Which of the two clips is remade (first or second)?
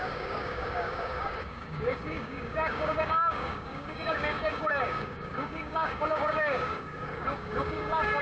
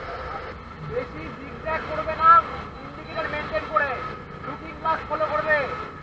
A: first